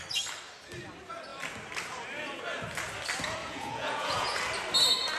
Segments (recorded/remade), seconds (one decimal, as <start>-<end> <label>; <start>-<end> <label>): 0.0-3.4 recorded; 3.4-4.4 remade; 4.4-5.2 recorded

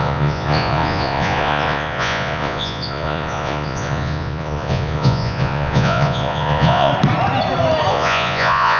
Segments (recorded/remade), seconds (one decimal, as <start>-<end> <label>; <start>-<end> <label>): 0.0-6.9 remade; 6.9-7.9 recorded; 7.9-8.8 remade